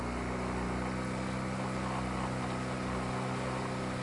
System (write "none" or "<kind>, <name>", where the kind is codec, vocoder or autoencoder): none